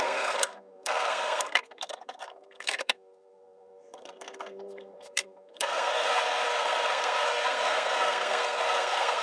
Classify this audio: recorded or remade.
remade